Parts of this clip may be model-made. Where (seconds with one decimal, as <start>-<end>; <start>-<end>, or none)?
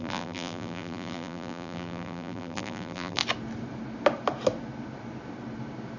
0.0-3.2